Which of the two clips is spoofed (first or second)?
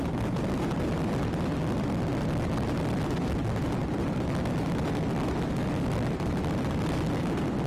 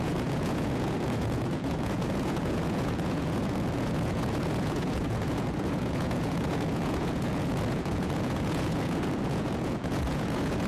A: second